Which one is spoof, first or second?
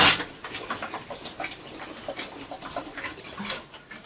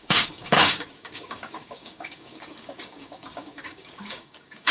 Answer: second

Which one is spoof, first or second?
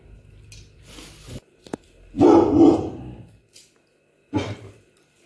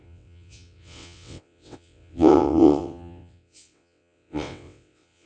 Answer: second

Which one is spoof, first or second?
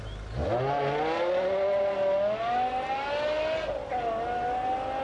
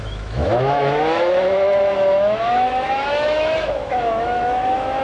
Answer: second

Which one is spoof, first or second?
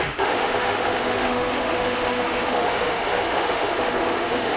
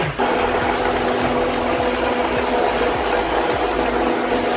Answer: first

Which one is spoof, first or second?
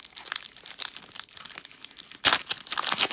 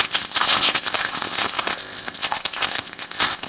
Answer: second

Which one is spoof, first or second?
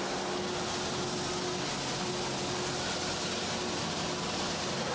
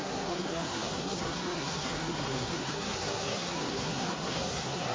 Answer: second